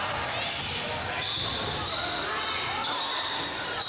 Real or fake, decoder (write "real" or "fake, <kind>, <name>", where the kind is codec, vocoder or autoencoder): real